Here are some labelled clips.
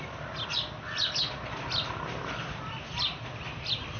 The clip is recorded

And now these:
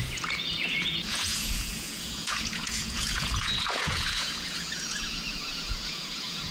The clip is remade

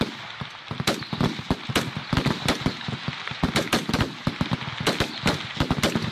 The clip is recorded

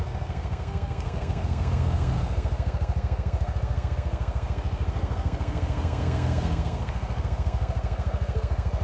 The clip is remade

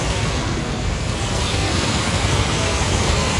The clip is remade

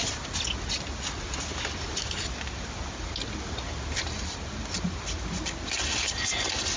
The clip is recorded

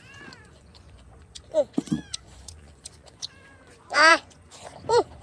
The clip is remade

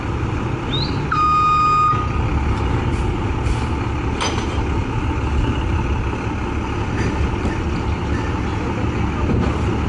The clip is recorded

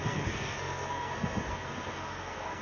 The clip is remade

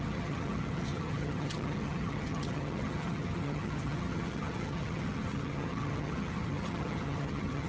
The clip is remade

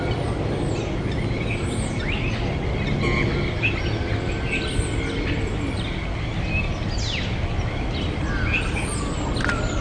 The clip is recorded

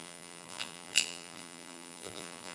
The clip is remade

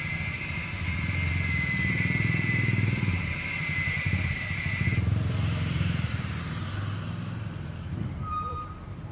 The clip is remade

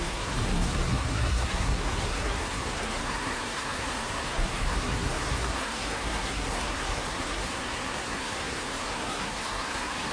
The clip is remade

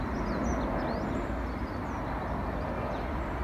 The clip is recorded